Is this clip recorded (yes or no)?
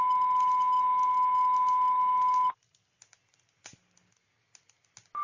yes